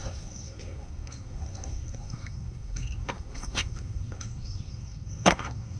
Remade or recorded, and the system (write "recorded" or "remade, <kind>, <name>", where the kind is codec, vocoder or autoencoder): remade, codec, SNAC